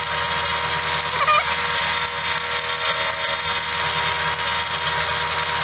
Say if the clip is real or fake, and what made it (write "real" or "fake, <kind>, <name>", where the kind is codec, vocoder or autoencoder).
real